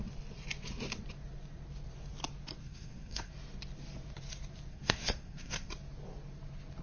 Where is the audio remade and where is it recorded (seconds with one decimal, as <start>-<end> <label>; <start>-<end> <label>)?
0.0-2.6 recorded; 2.6-3.3 remade; 3.3-4.7 recorded; 4.7-5.7 remade; 5.7-6.8 recorded